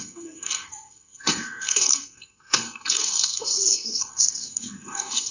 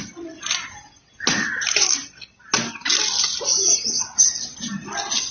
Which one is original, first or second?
second